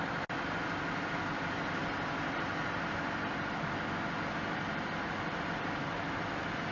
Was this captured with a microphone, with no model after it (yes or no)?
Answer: yes